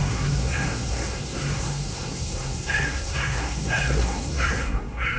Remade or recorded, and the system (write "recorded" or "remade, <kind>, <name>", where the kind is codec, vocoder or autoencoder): remade, codec, SNAC